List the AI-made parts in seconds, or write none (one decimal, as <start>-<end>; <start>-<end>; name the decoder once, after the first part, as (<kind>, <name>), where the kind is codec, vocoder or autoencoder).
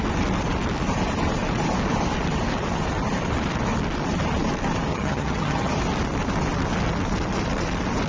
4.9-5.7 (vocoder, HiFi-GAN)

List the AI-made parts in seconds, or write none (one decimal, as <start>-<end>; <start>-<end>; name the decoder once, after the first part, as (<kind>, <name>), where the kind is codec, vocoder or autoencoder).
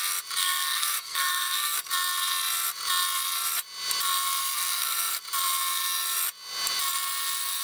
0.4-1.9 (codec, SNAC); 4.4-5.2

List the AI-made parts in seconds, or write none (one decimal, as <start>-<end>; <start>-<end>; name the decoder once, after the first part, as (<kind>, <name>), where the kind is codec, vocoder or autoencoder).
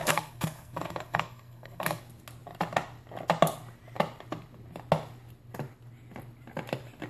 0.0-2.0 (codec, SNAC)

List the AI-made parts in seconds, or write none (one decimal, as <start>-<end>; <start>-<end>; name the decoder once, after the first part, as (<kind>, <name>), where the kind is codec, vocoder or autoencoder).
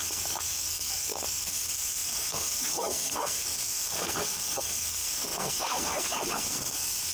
0.0-7.1 (codec, SNAC)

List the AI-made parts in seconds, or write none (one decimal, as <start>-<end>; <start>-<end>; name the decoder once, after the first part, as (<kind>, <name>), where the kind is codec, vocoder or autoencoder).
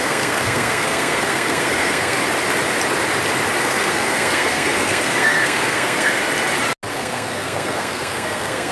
0.0-2.2 (codec, SNAC); 3.6-6.2; 6.9-8.7